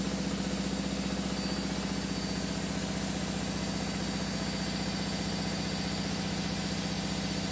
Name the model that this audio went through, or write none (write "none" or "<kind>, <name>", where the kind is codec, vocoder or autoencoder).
none